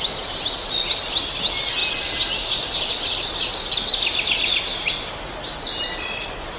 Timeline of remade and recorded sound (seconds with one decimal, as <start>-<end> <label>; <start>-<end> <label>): 0.0-6.6 recorded